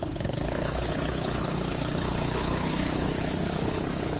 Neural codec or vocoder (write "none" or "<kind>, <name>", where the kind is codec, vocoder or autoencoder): codec, HILCodec